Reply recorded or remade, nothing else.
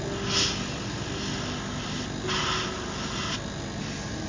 recorded